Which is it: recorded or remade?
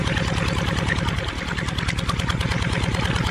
recorded